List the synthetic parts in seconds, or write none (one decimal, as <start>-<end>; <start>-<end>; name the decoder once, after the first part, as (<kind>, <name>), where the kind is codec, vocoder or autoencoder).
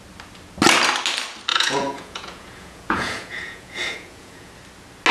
1.5-4.5 (vocoder, Vocos)